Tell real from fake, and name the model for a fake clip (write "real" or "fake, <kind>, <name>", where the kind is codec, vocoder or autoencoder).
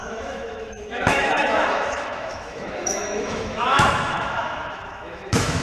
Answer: fake, autoencoder, DAC-VAE